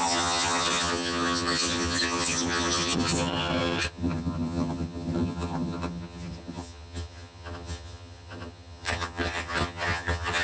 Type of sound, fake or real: fake